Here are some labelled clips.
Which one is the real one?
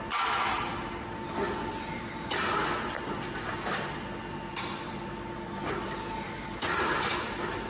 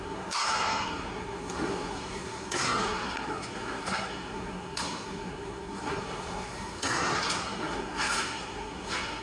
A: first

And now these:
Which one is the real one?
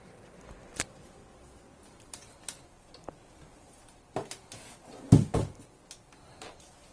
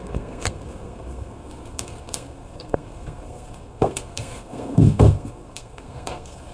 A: first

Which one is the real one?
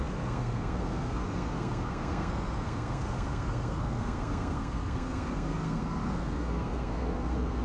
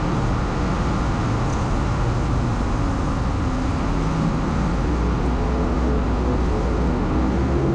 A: second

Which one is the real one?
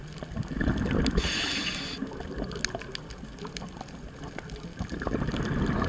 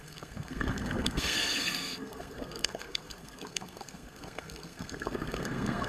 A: first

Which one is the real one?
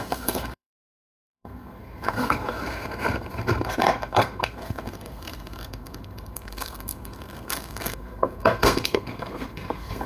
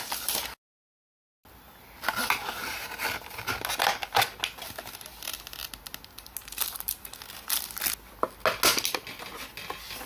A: second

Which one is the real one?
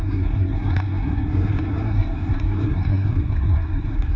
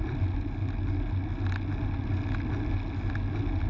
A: second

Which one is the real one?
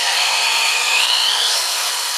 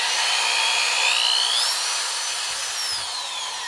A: second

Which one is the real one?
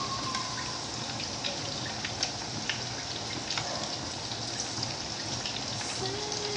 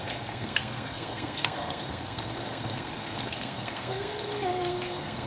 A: first